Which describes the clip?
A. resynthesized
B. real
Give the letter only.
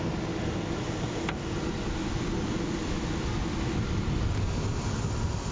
B